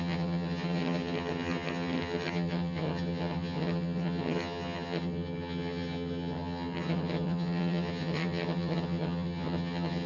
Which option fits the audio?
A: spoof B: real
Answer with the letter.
A